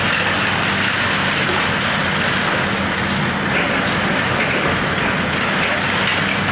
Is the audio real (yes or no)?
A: yes